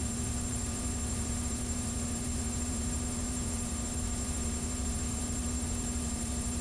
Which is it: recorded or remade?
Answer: remade